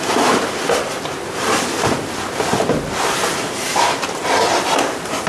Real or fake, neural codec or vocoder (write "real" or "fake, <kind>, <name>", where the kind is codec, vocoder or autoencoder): real